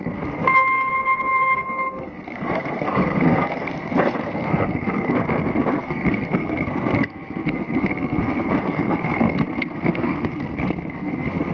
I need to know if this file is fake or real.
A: fake